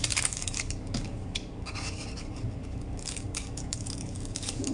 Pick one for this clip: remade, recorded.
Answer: remade